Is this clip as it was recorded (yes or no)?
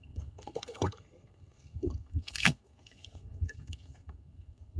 no